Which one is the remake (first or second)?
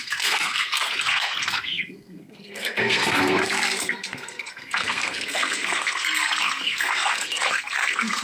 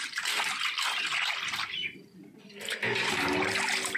first